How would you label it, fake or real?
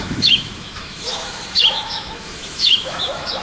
fake